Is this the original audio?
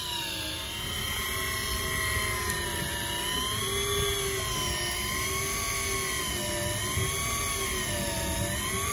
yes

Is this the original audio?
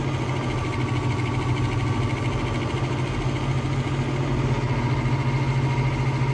yes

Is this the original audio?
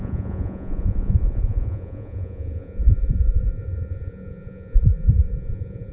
no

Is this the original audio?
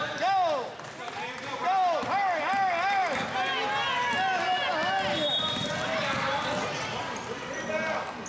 yes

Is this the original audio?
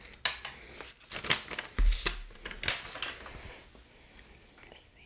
yes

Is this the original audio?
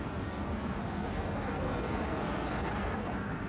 no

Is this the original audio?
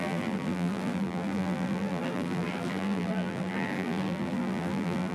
no